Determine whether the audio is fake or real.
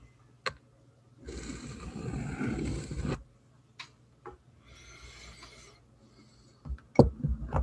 real